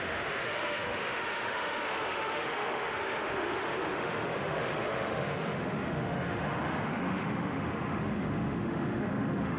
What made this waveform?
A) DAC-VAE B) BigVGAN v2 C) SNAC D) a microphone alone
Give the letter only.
A